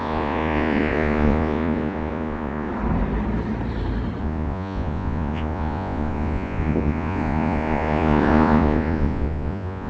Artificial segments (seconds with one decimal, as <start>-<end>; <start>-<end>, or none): 0.0-2.7; 4.2-9.9